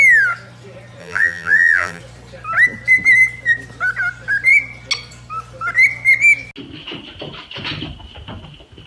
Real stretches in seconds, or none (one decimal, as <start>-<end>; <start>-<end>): 0.0-1.0; 2.0-8.9